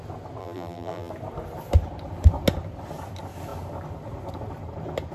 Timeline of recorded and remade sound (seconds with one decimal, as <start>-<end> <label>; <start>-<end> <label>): 0.0-0.4 recorded; 0.4-1.1 remade; 1.1-5.1 recorded